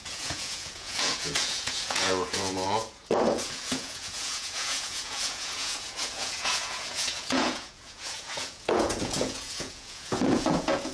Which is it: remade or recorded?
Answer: remade